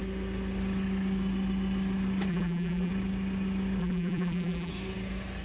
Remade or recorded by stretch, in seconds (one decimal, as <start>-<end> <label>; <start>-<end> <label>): 0.0-2.3 recorded; 2.3-2.9 remade; 2.9-3.8 recorded; 3.8-4.7 remade; 4.7-5.4 recorded